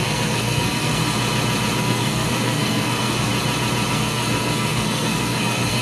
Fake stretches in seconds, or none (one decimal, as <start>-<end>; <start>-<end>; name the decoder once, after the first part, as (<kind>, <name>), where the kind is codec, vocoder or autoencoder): 0.0-1.0 (codec, SNAC); 1.8-3.3; 3.9-5.8